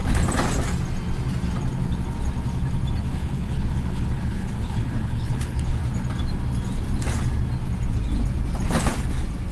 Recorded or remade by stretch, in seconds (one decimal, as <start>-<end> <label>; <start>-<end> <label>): 0.0-3.0 recorded; 3.0-5.8 remade; 5.8-9.5 recorded